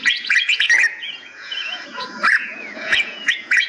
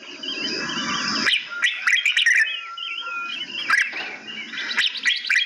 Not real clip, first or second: first